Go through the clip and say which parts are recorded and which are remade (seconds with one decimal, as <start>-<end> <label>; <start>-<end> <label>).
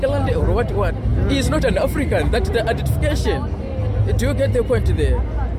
0.0-5.6 recorded